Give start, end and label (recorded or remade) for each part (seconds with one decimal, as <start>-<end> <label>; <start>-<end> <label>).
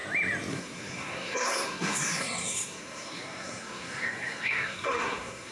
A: 0.0-0.5 recorded; 0.5-5.5 remade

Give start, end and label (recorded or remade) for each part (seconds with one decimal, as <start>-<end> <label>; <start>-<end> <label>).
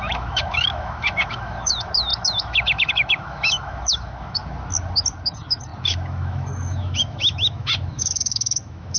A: 0.0-4.4 remade; 4.4-5.3 recorded; 5.3-9.0 remade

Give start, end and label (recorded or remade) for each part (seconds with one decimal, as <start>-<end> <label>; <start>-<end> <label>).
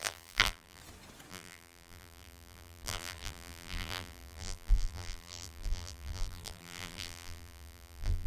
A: 0.0-0.8 remade; 0.8-1.3 recorded; 1.3-8.3 remade